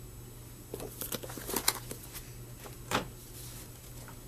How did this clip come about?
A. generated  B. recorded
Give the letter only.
B